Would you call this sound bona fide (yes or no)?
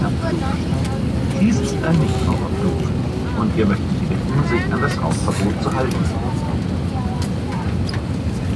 yes